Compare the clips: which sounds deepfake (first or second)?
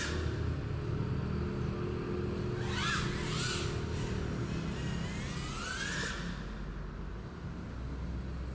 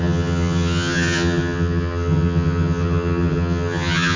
second